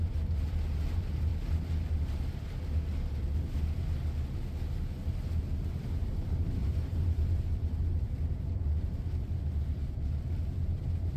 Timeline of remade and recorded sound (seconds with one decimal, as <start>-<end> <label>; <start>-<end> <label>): 0.0-1.3 remade; 1.3-5.6 recorded; 5.6-11.2 remade